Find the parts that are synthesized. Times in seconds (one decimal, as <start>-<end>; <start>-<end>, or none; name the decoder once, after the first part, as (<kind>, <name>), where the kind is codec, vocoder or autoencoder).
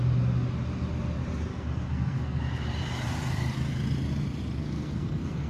1.5-2.4 (codec, SNAC); 4.6-5.5